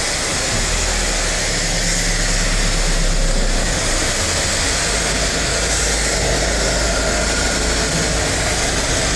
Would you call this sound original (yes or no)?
yes